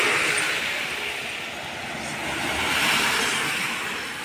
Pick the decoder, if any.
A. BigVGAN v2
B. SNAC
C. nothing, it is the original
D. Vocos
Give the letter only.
C